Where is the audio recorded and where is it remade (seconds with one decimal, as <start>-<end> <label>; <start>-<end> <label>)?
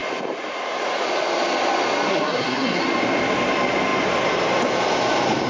0.0-2.1 recorded; 2.1-2.8 remade; 2.8-5.5 recorded